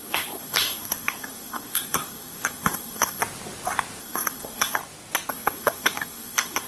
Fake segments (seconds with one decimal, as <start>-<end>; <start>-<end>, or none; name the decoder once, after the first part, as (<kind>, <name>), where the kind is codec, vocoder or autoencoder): 0.0-3.2 (codec, SNAC); 4.0-4.8; 5.3-6.7